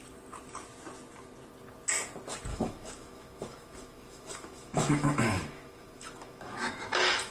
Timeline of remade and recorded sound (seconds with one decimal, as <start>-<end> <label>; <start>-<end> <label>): 0.0-2.5 recorded; 2.5-7.3 remade